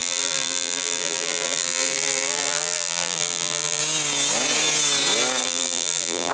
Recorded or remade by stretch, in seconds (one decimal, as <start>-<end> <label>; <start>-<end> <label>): 0.0-3.8 remade; 3.8-5.4 recorded; 5.4-6.3 remade

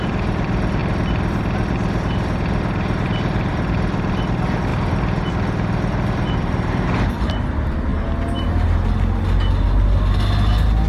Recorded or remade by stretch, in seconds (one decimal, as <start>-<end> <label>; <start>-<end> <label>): 0.0-4.7 remade; 4.7-5.3 recorded; 5.3-7.9 remade; 7.9-10.9 recorded

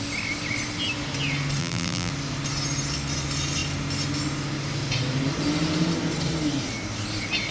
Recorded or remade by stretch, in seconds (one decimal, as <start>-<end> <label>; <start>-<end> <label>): 0.0-1.6 recorded; 1.6-2.1 remade; 2.1-7.5 recorded

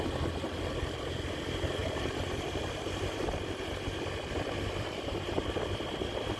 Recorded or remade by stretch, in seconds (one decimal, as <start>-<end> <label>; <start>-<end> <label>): 0.0-1.8 recorded; 1.8-5.6 remade; 5.6-6.4 recorded

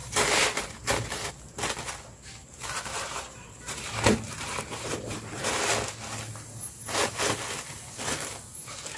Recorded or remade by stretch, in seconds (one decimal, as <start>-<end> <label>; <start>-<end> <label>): 0.0-1.3 remade; 1.3-2.4 recorded; 2.4-5.6 remade; 5.6-9.0 recorded

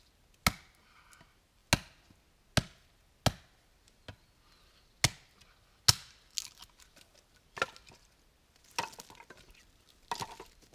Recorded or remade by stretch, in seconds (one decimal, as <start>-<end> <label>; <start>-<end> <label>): 0.0-10.7 recorded